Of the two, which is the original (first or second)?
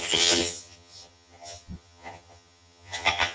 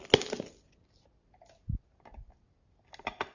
second